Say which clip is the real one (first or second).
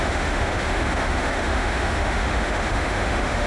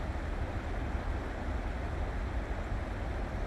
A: second